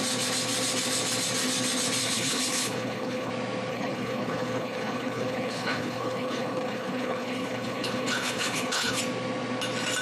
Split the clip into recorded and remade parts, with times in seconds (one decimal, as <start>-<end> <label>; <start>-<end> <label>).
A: 0.0-2.0 recorded; 2.0-3.3 remade; 3.3-3.7 recorded; 3.7-9.0 remade; 9.0-10.0 recorded